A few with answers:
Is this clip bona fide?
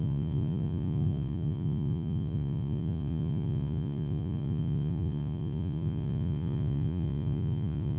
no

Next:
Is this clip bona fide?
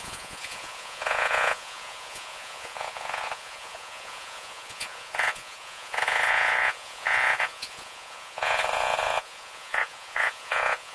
no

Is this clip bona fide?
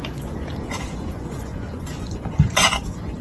no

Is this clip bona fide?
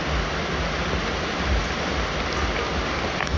yes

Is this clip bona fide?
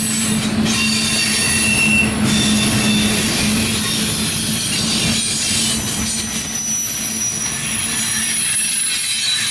yes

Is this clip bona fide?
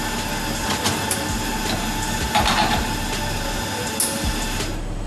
yes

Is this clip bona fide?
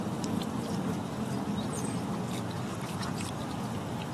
yes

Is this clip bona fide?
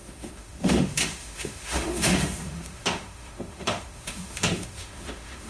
no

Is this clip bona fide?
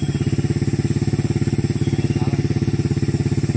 yes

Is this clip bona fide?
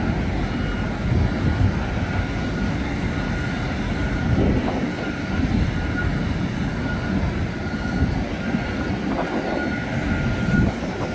yes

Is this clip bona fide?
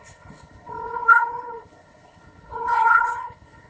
no